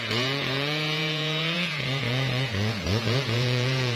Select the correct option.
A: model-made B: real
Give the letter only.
A